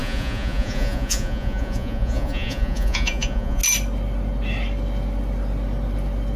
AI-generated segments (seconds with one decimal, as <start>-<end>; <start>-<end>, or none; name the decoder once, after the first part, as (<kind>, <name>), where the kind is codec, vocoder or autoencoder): 0.0-3.6 (vocoder, Vocos)